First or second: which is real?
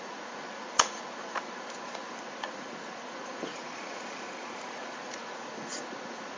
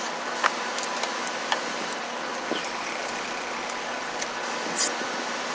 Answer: second